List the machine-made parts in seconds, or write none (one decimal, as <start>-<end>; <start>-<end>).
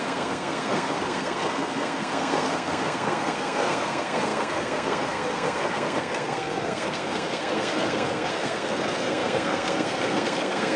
0.0-10.8